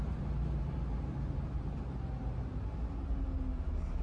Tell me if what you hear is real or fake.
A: real